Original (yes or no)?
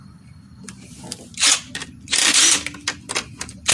yes